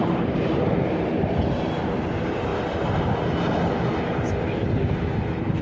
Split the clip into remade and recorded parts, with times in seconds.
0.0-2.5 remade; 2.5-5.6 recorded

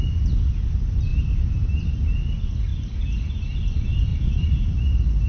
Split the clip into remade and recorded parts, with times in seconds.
0.0-2.7 recorded; 2.7-3.4 remade; 3.4-4.1 recorded; 4.1-4.8 remade; 4.8-5.3 recorded

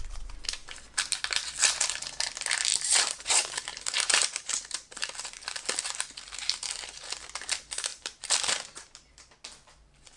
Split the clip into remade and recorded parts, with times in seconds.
0.0-2.7 recorded; 2.7-7.1 remade; 7.1-7.9 recorded; 7.9-9.3 remade; 9.3-10.2 recorded

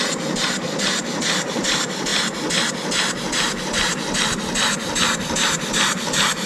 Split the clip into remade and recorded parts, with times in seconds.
0.0-2.1 remade; 2.1-5.7 recorded; 5.7-6.5 remade

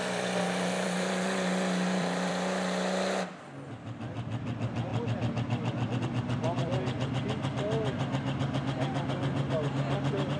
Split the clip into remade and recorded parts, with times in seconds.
0.0-2.3 remade; 2.3-10.4 recorded

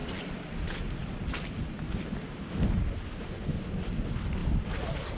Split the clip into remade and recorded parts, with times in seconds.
0.0-5.2 recorded